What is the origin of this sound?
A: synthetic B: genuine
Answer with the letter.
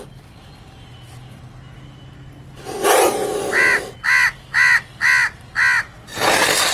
B